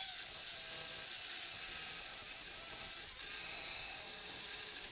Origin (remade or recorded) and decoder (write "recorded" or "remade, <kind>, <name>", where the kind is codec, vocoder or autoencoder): recorded